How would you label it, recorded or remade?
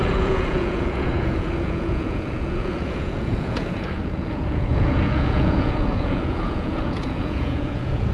remade